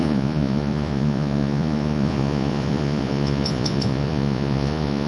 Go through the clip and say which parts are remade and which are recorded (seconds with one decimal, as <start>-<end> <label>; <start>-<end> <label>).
0.0-5.1 remade

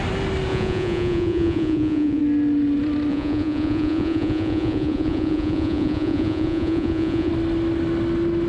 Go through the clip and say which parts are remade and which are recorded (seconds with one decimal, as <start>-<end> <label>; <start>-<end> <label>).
0.0-0.5 recorded; 0.5-2.2 remade; 2.2-3.1 recorded; 3.1-7.3 remade; 7.3-8.5 recorded

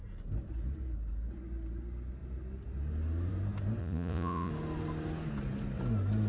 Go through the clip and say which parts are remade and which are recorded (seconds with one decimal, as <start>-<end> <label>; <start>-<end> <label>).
0.0-3.8 recorded; 3.8-4.5 remade; 4.5-6.3 recorded